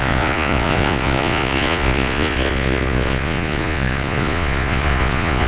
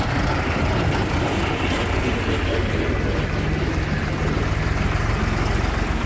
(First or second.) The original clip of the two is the second